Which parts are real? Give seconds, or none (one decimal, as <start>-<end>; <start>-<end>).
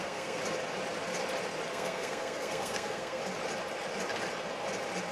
0.4-1.7; 3.2-5.1